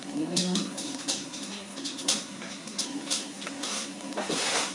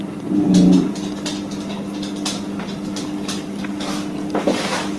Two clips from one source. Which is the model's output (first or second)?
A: first